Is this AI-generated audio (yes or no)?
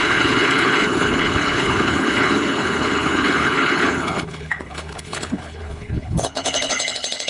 yes